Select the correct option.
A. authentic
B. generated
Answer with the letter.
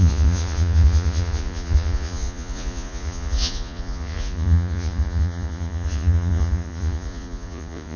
B